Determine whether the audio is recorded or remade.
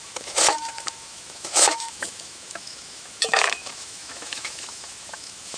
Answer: remade